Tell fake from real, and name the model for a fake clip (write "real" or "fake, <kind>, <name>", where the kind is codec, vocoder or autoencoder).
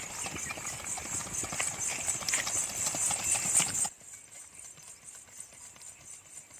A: real